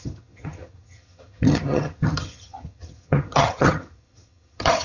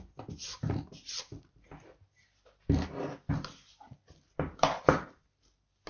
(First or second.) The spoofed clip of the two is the first